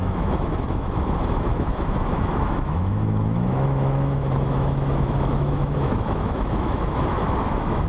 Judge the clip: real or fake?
fake